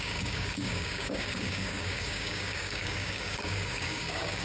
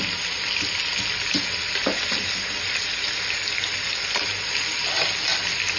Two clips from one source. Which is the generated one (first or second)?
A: first